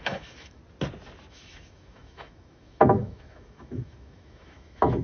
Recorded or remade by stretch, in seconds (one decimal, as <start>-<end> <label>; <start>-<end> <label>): 0.0-0.6 remade; 0.6-1.3 recorded; 1.3-5.0 remade